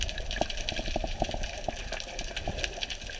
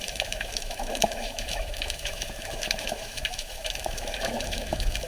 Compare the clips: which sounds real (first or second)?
first